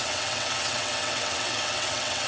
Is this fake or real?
fake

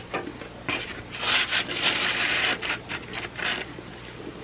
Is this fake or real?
real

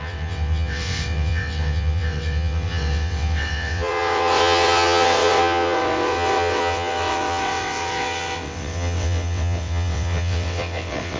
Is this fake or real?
fake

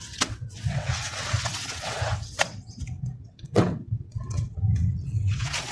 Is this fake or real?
fake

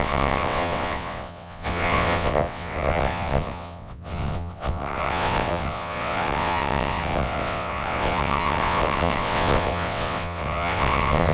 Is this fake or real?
fake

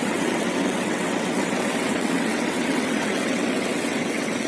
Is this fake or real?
fake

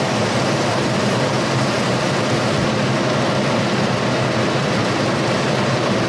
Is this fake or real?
real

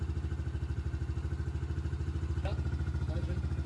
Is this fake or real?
real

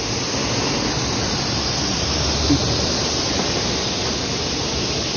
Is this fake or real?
real